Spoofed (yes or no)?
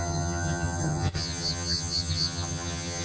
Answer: yes